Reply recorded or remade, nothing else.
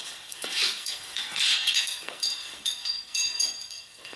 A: remade